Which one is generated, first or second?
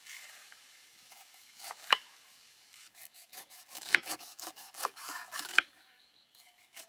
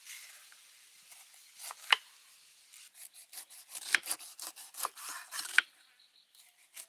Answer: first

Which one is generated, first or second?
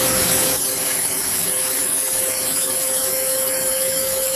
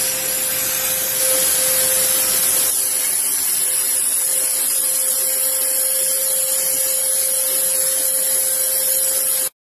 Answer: first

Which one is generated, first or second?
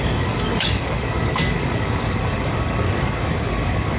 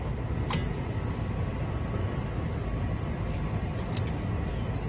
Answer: first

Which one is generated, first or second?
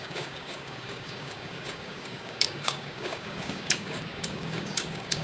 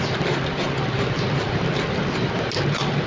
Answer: first